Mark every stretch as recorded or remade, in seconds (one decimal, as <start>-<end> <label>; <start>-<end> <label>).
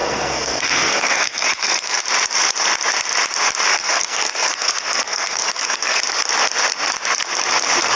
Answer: 0.0-2.0 remade; 2.0-3.7 recorded; 3.7-6.0 remade; 6.0-8.0 recorded